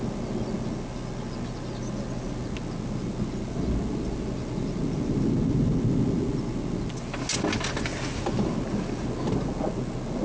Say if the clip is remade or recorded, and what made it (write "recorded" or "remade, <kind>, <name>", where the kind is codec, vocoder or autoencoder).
recorded